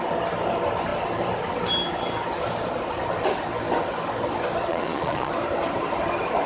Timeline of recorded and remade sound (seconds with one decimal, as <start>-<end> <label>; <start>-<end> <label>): 0.0-4.7 recorded; 4.7-5.3 remade; 5.3-6.5 recorded